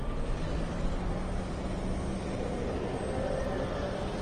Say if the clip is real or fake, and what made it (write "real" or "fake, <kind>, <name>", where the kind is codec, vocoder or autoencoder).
real